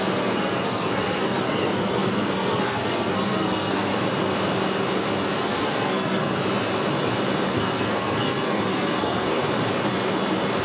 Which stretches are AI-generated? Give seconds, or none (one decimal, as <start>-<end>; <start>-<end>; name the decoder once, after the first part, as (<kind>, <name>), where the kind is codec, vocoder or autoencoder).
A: 0.0-3.9 (codec, SNAC); 5.4-6.4; 7.5-9.4